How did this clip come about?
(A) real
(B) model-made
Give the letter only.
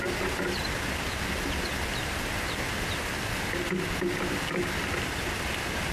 A